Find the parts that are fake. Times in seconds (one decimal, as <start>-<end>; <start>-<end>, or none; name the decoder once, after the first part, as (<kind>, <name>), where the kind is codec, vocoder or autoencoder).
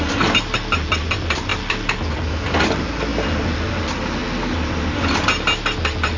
none